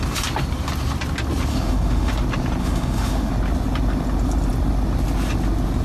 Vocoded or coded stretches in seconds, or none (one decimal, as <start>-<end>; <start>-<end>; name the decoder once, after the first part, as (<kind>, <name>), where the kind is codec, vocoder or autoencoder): 1.5-2.1 (autoencoder, DAC-VAE); 2.6-3.3